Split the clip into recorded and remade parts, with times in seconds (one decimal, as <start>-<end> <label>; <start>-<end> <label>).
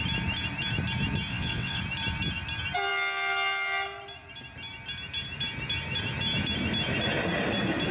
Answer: 0.0-1.3 recorded; 1.3-1.8 remade; 1.8-7.9 recorded